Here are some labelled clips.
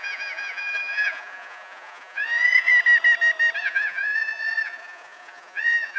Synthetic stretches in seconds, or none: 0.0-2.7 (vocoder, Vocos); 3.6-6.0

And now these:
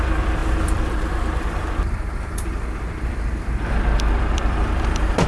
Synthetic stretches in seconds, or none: 0.0-5.3 (vocoder, BigVGAN v2)

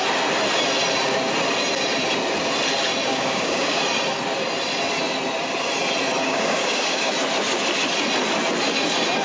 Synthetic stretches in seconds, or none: 3.1-3.8 (codec, DAC); 6.2-7.1

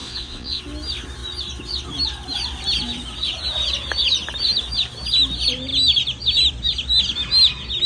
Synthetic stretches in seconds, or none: 0.0-0.6 (vocoder, Vocos)

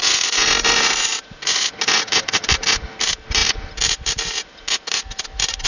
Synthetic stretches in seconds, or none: none